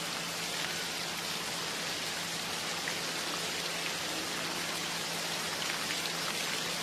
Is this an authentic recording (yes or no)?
yes